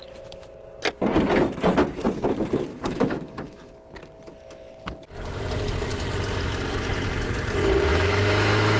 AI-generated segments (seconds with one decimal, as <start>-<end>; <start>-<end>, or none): 2.7-3.7; 7.9-8.8